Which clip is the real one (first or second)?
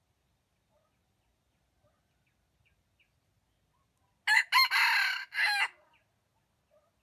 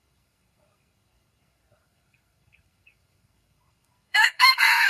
first